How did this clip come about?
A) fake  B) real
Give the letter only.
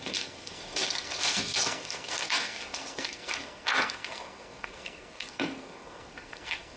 A